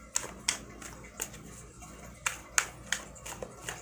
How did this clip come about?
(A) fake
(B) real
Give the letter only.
B